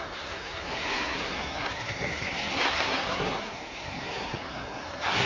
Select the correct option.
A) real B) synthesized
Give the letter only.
B